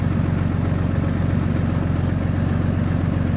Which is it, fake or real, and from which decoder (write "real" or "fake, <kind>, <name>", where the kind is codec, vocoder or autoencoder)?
real